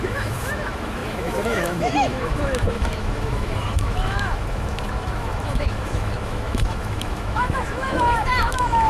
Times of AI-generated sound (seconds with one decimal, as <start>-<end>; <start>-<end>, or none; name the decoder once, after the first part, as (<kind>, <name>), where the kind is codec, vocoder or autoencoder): 0.0-8.9 (autoencoder, DAC-VAE)